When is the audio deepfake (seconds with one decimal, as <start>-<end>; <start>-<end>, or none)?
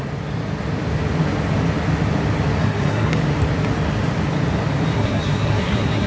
2.6-3.2; 4.9-6.1